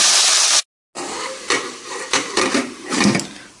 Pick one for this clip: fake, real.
real